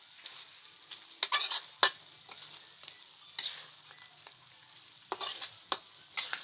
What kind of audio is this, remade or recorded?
recorded